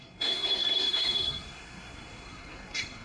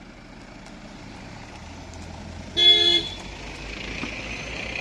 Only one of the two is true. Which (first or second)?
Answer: second